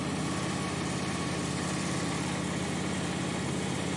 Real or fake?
real